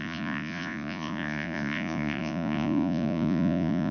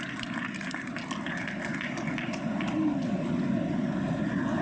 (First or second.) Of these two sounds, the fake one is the first